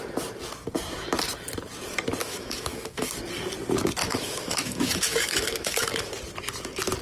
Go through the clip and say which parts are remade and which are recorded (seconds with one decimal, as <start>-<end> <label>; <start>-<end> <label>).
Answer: 0.0-2.2 recorded; 2.2-3.1 remade; 3.1-4.0 recorded; 4.0-6.1 remade; 6.1-7.0 recorded